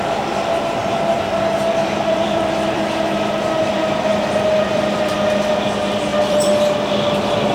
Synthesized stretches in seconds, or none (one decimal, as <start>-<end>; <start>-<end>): 0.8-2.8; 4.1-5.0; 6.1-6.6